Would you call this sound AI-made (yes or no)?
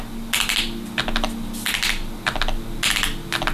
no